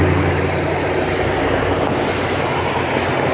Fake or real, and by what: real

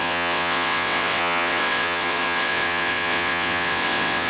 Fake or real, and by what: fake, vocoder, WaveNeXt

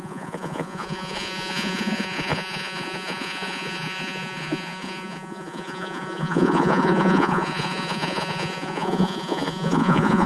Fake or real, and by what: fake, vocoder, Vocos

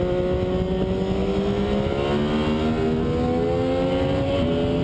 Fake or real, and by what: real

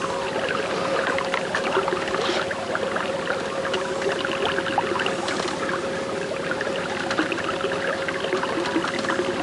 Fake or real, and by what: real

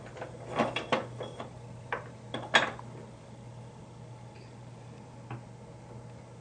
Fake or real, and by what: real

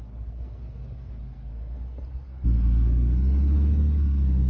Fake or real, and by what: fake, codec, SNAC